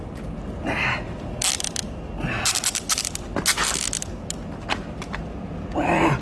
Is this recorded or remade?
recorded